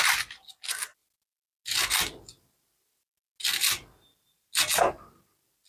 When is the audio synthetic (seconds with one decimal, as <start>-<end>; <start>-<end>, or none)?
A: none